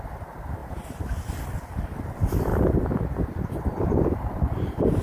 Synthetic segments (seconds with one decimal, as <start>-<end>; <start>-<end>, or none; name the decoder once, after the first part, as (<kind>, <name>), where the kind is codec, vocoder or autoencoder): 2.5-3.5 (vocoder, BigVGAN v2)